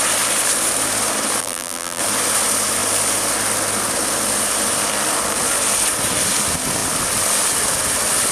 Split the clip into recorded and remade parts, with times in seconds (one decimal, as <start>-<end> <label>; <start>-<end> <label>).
0.0-1.4 recorded; 1.4-2.0 remade; 2.0-8.3 recorded